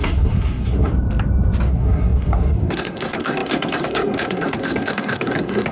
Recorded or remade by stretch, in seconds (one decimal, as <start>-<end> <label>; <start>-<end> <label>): 0.0-0.9 remade; 0.9-1.7 recorded; 1.7-5.7 remade